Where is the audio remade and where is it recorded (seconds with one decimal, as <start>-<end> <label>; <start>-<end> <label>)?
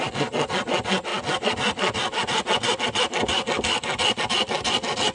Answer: 0.0-5.1 recorded